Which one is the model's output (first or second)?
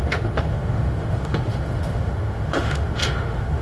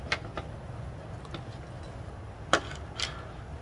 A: first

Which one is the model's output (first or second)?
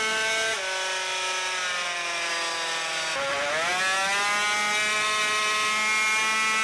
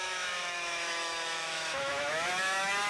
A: second